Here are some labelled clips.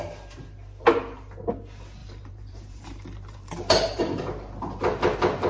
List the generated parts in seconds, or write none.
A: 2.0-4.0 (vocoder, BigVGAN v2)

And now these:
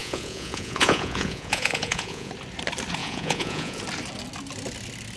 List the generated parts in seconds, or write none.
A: 0.0-2.3 (vocoder, Vocos); 3.0-3.8

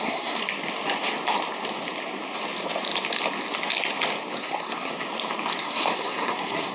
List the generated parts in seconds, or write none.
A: 0.0-0.4 (codec, SNAC); 4.4-4.9; 5.6-6.7

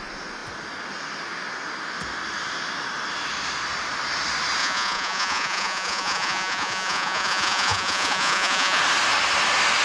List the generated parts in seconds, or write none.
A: 4.6-8.8 (vocoder, Vocos)

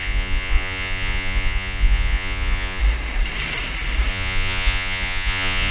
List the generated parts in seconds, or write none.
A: 0.0-2.8 (vocoder, Vocos); 4.1-5.7

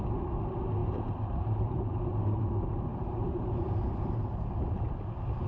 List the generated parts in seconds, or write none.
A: 0.8-2.4 (vocoder, BigVGAN v2); 2.9-4.2

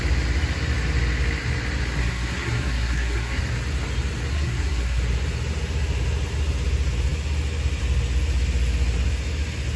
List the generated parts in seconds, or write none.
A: 2.0-3.4 (codec, SNAC); 4.3-5.0

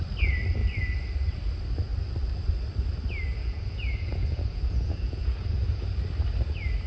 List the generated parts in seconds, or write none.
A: 3.4-5.8 (vocoder, Vocos)